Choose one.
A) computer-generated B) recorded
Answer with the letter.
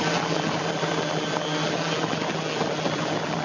B